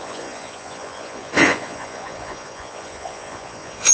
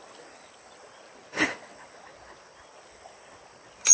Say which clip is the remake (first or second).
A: first